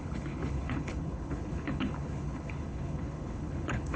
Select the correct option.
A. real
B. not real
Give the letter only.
B